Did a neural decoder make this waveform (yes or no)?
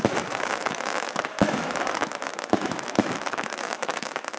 yes